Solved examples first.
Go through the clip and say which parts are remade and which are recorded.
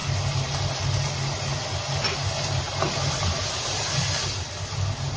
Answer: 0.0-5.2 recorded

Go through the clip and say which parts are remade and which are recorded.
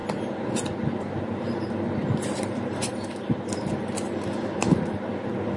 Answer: 0.0-2.0 recorded; 2.0-5.1 remade; 5.1-5.6 recorded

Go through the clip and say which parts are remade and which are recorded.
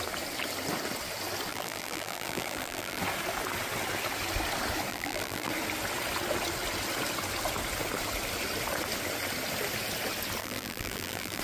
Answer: 0.0-1.5 recorded; 1.5-3.0 remade; 3.0-4.9 recorded; 4.9-5.5 remade; 5.5-10.4 recorded; 10.4-11.4 remade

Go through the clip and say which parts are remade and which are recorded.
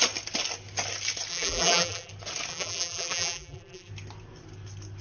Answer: 0.0-1.3 recorded; 1.3-2.1 remade; 2.1-2.5 recorded; 2.5-3.9 remade; 3.9-5.0 recorded